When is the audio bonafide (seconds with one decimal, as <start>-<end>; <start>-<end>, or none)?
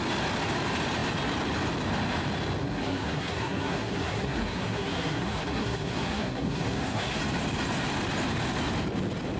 0.0-2.6; 7.2-9.4